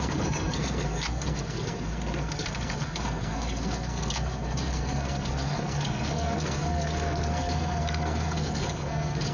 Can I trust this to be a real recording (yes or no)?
no